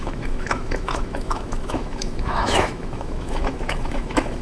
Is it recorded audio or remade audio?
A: remade